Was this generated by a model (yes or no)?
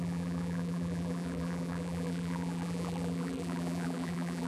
yes